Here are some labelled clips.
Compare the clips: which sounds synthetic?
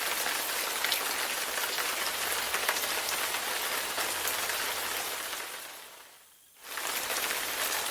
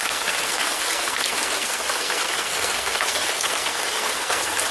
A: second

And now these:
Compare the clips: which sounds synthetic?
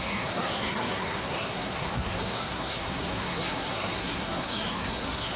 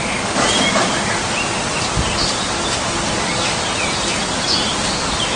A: first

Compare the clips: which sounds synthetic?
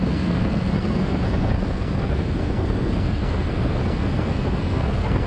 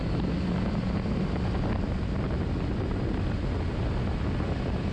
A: first